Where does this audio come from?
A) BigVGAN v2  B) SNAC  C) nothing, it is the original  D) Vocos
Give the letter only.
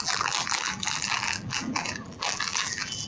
A